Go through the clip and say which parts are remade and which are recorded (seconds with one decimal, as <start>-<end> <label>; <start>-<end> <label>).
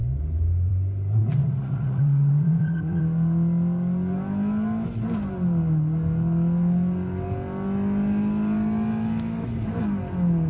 0.0-1.2 recorded; 1.2-3.0 remade; 3.0-10.5 recorded